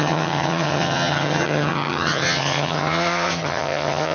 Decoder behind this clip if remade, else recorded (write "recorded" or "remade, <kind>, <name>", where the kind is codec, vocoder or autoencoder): remade, vocoder, HiFi-GAN